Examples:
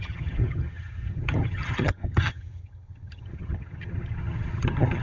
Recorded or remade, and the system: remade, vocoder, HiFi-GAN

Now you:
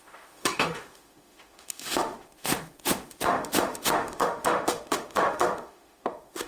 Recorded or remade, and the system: remade, autoencoder, DAC-VAE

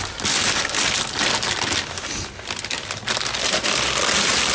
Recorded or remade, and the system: recorded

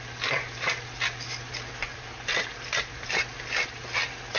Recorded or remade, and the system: recorded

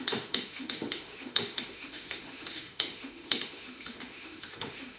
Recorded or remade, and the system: remade, autoencoder, DAC-VAE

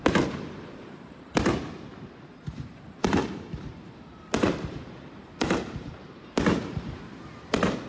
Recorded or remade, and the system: remade, vocoder, BigVGAN v2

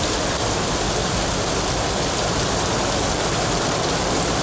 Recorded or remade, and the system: remade, vocoder, BigVGAN v2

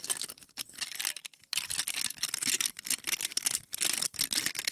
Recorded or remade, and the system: recorded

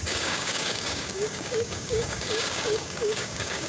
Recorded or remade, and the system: remade, codec, DAC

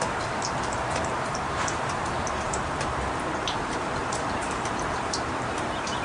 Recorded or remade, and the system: remade, vocoder, BigVGAN v2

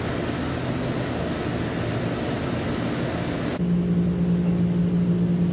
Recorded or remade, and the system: recorded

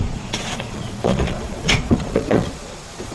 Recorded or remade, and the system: remade, vocoder, Vocos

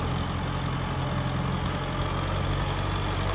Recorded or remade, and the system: recorded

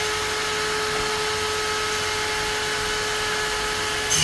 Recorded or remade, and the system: recorded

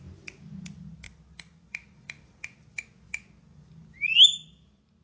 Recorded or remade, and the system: recorded